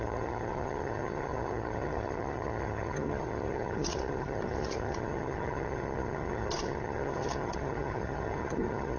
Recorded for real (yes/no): no